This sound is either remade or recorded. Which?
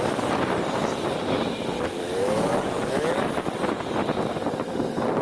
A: recorded